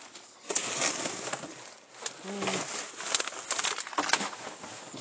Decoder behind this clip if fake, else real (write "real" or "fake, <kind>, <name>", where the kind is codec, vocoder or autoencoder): real